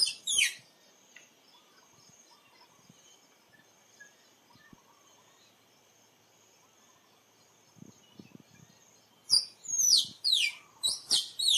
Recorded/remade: recorded